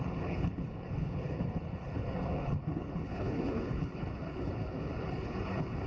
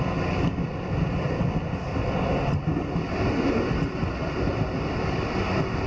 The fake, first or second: first